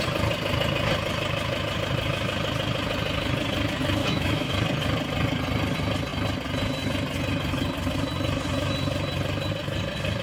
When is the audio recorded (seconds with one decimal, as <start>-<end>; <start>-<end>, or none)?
0.0-4.0; 4.5-10.2